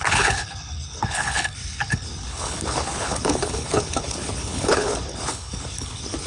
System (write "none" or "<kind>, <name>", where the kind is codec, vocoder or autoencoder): codec, HILCodec